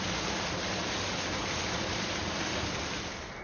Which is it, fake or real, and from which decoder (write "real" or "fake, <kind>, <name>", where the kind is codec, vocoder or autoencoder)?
real